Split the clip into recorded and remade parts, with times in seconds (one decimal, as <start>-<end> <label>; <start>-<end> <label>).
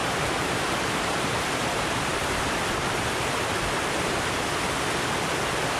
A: 0.0-2.2 remade; 2.2-5.8 recorded